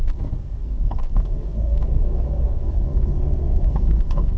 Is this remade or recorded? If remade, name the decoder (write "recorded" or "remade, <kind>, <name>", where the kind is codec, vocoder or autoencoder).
remade, codec, SNAC